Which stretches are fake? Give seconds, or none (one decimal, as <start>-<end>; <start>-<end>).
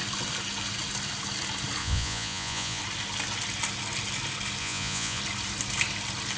1.8-2.8; 4.6-5.2